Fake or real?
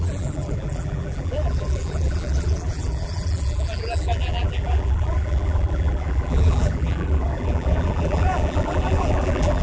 fake